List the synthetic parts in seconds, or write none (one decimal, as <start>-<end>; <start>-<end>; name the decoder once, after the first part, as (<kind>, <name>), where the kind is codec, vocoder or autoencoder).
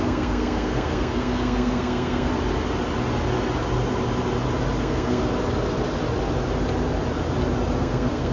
0.0-2.3 (codec, SNAC); 4.8-5.2; 7.8-8.3